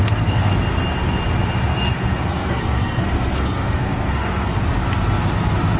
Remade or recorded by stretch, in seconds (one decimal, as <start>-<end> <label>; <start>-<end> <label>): 0.0-0.5 remade; 0.5-1.7 recorded; 1.7-4.6 remade; 4.6-5.8 recorded